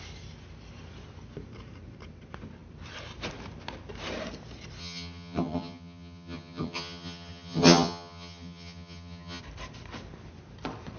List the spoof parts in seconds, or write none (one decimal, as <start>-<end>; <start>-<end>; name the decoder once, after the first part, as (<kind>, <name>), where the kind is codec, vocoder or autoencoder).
4.8-9.4 (vocoder, HiFi-GAN)